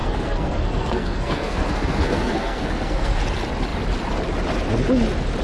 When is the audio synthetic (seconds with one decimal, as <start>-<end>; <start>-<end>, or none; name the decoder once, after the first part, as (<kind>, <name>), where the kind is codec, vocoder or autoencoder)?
0.0-3.2 (codec, SNAC)